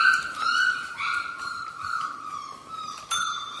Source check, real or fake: fake